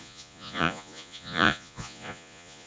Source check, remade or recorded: remade